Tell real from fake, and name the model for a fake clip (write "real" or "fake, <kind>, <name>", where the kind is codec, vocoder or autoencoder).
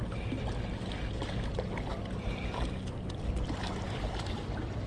real